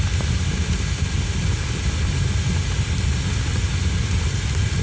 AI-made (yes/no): no